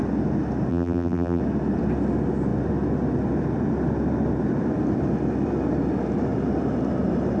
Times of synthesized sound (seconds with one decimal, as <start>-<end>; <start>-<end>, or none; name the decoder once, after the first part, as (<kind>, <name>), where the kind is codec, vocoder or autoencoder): 0.7-1.4 (vocoder, BigVGAN v2)